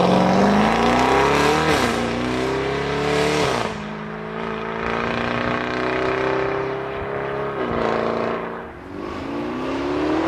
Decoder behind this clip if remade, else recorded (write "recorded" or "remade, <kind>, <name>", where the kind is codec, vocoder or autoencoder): recorded